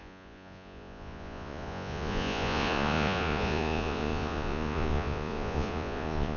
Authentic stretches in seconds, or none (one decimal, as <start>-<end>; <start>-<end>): none